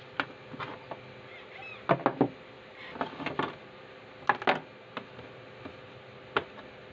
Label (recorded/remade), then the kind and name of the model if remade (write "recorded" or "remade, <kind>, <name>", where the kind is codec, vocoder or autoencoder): recorded